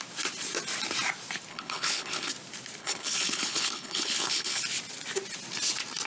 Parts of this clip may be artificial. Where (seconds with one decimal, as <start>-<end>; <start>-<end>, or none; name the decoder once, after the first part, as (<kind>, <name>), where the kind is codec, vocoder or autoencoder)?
1.5-2.3 (codec, HILCodec); 2.8-4.6